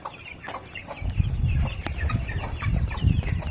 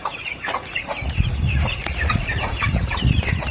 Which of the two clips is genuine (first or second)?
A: first